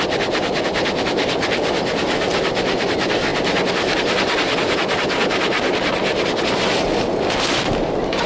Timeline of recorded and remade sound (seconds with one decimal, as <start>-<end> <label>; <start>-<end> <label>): 0.0-8.3 recorded